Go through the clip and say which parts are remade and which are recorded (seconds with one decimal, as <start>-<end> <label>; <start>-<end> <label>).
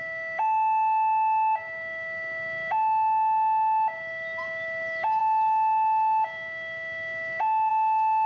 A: 0.0-8.3 recorded